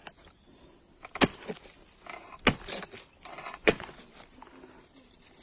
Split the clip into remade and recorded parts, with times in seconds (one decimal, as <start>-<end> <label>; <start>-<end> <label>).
0.0-3.3 recorded; 3.3-4.0 remade; 4.0-5.4 recorded